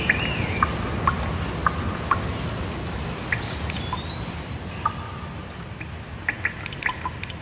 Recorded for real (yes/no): yes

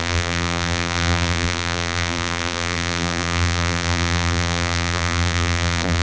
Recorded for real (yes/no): no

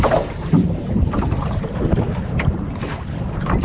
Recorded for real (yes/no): no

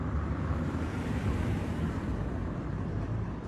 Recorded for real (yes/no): no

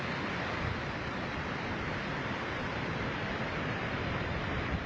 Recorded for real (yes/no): no